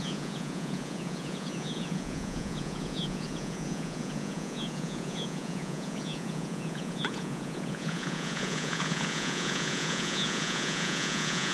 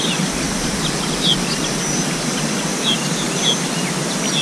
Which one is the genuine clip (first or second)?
second